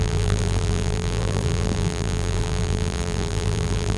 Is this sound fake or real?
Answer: fake